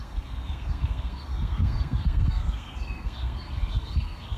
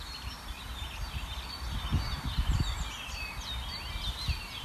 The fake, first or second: first